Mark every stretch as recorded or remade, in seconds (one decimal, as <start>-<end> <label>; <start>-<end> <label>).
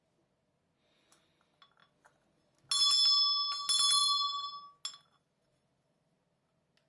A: 0.0-6.9 recorded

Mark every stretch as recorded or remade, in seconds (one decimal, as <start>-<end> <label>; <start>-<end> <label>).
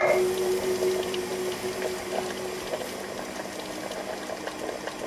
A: 0.0-1.3 remade; 1.3-4.4 recorded; 4.4-5.1 remade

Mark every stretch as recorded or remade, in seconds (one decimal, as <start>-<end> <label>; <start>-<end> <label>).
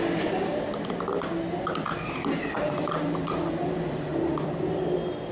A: 0.0-1.1 remade; 1.1-2.3 recorded; 2.3-4.1 remade; 4.1-5.3 recorded